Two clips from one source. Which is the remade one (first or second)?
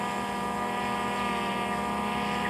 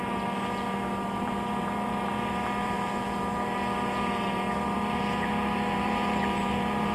second